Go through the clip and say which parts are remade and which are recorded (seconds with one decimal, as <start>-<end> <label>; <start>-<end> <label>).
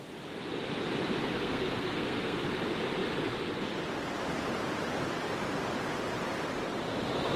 0.0-1.3 recorded; 1.3-2.4 remade; 2.4-7.4 recorded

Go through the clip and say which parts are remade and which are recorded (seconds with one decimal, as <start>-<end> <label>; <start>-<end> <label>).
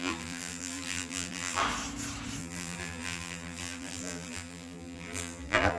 0.0-1.6 remade; 1.6-2.4 recorded; 2.4-5.8 remade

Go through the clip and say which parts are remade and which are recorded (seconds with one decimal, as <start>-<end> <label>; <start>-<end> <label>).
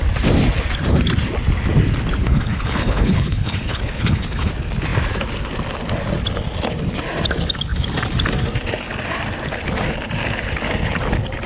0.0-2.2 recorded; 2.2-4.5 remade; 4.5-11.5 recorded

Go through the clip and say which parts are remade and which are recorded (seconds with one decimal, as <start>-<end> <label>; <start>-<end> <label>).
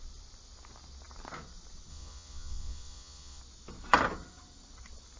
0.0-1.9 recorded; 1.9-3.4 remade; 3.4-5.2 recorded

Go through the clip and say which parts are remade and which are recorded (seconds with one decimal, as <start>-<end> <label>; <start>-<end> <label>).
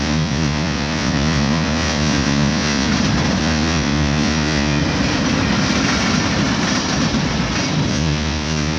0.0-2.9 remade; 2.9-3.4 recorded; 3.4-4.8 remade; 4.8-7.9 recorded; 7.9-8.8 remade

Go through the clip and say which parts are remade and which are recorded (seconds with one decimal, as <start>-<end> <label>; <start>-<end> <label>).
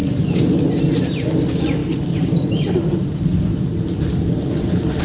0.0-5.0 recorded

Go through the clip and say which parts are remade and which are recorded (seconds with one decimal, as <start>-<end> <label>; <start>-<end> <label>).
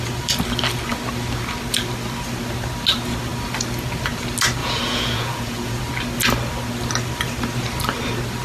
0.0-4.6 recorded; 4.6-5.8 remade; 5.8-8.4 recorded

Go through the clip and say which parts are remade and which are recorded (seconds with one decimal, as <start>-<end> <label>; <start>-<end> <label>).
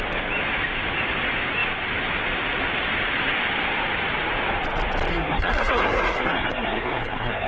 0.0-5.1 recorded; 5.1-7.5 remade